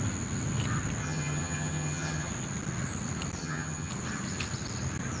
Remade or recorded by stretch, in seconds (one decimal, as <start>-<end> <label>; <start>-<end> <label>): 0.0-1.0 recorded; 1.0-2.3 remade; 2.3-3.4 recorded; 3.4-3.9 remade; 3.9-5.2 recorded